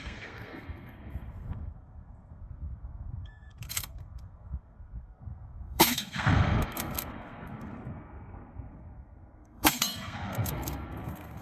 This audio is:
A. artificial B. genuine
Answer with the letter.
A